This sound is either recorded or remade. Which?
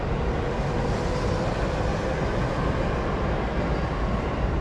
recorded